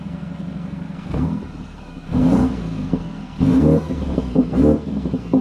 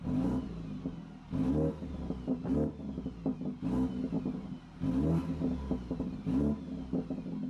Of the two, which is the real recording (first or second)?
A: second